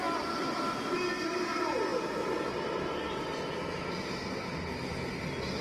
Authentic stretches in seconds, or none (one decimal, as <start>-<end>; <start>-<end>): 0.0-5.6